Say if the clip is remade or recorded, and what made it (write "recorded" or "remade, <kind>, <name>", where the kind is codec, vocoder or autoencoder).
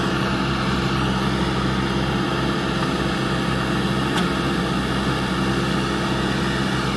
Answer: recorded